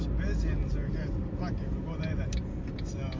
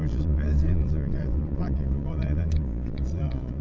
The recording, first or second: first